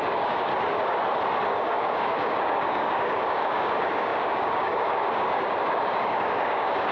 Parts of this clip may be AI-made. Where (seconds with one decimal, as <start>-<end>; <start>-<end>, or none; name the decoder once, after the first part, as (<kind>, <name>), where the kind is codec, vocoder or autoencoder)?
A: 0.0-0.5 (codec, DAC); 1.5-6.9